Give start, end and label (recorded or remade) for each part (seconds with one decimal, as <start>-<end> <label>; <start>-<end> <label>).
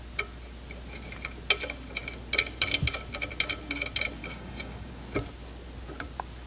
0.0-4.2 recorded; 4.2-4.9 remade; 4.9-6.5 recorded